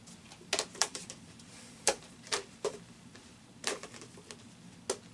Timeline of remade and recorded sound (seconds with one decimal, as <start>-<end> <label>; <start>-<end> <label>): 0.0-0.7 recorded; 0.7-3.8 remade; 3.8-5.1 recorded